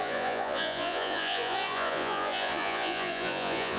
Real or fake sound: fake